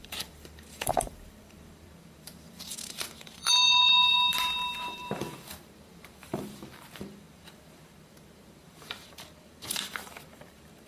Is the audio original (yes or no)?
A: no